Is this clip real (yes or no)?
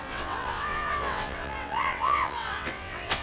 no